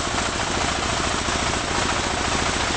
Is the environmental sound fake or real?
real